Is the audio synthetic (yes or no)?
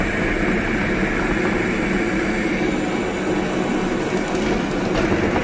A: no